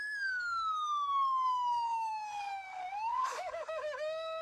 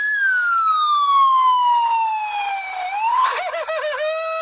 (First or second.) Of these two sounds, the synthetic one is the first